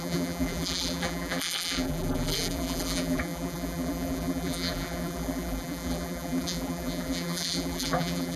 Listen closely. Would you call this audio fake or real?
fake